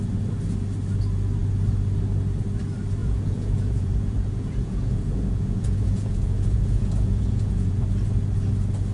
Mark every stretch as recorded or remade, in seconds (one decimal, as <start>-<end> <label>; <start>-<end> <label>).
0.0-3.0 recorded; 3.0-7.8 remade; 7.8-8.9 recorded